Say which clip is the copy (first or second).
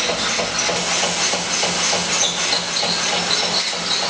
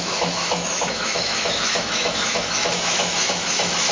second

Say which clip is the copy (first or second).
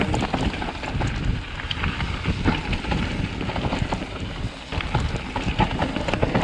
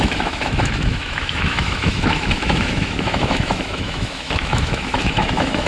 second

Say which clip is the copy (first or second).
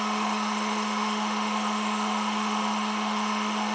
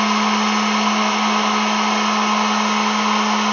first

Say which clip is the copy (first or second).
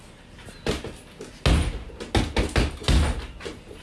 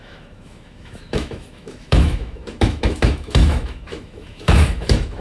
second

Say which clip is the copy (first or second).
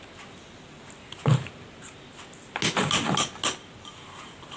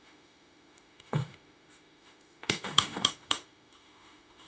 second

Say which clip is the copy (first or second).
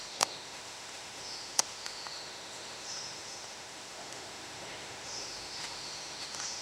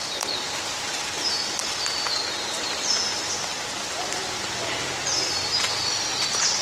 first